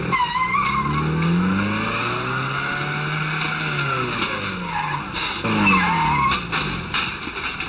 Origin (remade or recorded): recorded